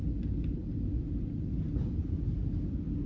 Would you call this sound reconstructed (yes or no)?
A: no